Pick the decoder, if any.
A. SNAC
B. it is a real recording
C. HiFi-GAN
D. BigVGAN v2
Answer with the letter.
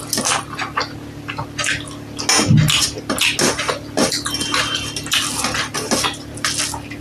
B